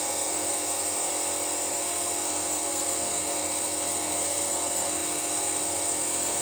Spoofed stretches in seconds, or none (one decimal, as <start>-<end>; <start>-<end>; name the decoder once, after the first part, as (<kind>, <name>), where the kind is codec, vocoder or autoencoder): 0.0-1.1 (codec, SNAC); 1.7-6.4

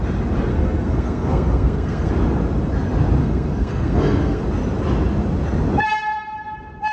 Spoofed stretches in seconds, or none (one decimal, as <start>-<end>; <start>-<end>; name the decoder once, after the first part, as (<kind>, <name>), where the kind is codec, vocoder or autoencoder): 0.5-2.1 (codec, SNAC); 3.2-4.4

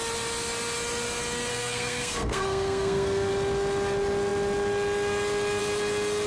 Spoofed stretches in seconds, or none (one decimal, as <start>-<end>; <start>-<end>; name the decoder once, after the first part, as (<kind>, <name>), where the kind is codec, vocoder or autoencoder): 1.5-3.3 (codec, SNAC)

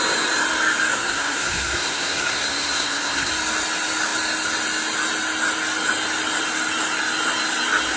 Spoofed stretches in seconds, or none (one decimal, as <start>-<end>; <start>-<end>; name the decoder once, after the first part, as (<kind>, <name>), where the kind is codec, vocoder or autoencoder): 0.9-3.3 (codec, SNAC)

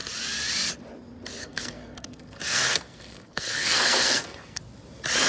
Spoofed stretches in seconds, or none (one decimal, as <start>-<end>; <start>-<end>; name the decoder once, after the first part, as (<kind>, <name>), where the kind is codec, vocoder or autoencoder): 1.4-4.6 (codec, SNAC)

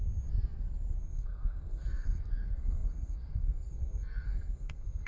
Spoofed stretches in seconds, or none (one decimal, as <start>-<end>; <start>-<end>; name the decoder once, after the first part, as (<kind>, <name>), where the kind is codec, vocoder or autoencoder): 1.0-5.1 (codec, SNAC)